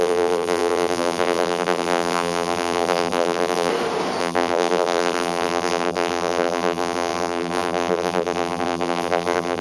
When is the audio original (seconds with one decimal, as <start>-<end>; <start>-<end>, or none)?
3.7-4.2